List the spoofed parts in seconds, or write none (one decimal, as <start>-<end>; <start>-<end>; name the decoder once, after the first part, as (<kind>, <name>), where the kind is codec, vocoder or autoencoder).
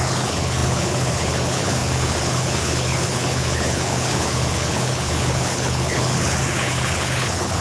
0.0-7.6 (codec, HILCodec)